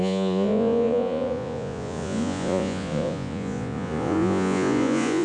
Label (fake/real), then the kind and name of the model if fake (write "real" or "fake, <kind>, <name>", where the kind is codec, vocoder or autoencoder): fake, vocoder, Vocos